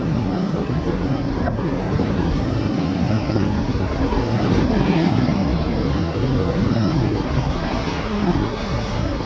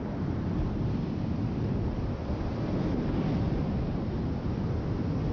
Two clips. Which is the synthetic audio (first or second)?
first